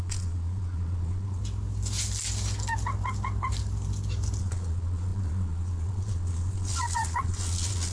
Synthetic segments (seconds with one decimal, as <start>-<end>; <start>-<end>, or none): 0.0-1.4; 4.4-7.9